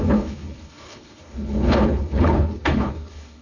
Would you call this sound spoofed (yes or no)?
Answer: yes